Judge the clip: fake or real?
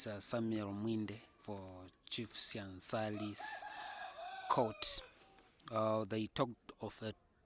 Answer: real